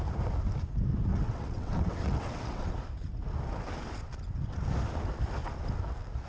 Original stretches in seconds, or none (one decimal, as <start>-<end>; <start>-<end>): 0.0-1.1; 2.7-6.3